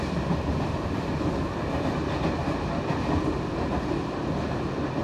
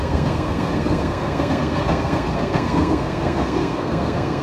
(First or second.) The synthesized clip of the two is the second